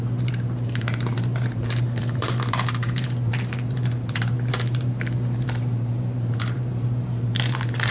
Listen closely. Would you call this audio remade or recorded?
remade